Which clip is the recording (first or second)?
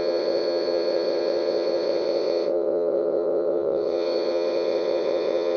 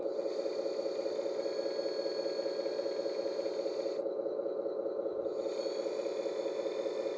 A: second